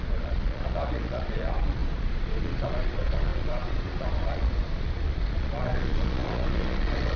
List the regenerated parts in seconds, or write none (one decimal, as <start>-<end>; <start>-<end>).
0.0-7.2